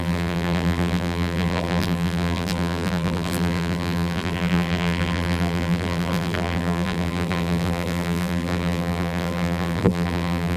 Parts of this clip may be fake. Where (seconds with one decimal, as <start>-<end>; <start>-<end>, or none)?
0.0-10.6